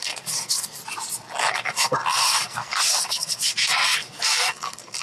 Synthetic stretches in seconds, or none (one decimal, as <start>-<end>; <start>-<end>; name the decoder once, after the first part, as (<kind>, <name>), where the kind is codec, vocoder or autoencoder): 0.0-0.8 (codec, SNAC); 1.5-5.0